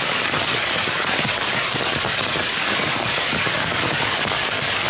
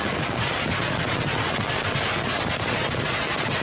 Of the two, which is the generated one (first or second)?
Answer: first